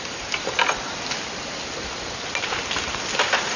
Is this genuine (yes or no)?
yes